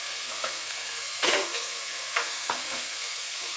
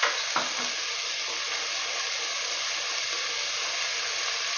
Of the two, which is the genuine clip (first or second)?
second